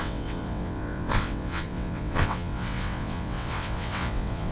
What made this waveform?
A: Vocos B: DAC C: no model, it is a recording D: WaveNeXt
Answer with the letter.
D